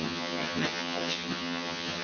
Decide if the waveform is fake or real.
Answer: fake